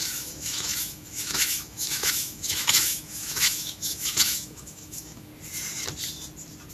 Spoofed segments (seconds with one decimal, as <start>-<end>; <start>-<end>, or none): 0.0-5.3